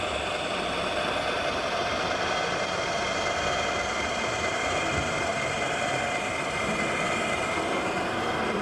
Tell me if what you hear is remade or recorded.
recorded